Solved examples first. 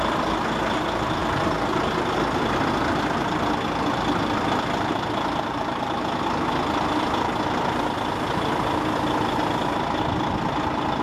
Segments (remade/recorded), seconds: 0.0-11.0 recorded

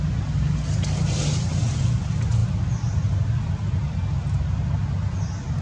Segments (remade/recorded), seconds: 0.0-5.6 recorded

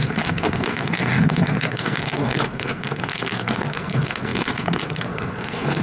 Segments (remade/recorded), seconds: 0.0-5.8 remade

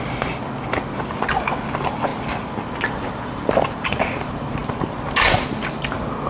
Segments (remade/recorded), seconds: 0.0-6.3 recorded

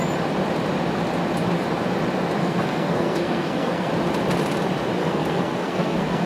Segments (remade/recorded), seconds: 0.0-2.4 recorded; 2.4-3.9 remade; 3.9-5.0 recorded; 5.0-6.3 remade

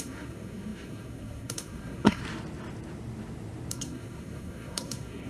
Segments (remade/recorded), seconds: 0.0-2.2 remade; 2.2-3.7 recorded; 3.7-5.3 remade